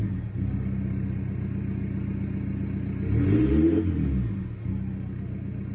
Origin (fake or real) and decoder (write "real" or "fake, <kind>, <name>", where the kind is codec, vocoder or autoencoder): real